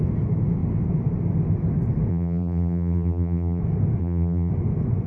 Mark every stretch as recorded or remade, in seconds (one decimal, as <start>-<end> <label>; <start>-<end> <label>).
0.0-2.1 recorded; 2.1-3.6 remade; 3.6-4.0 recorded; 4.0-4.5 remade; 4.5-5.1 recorded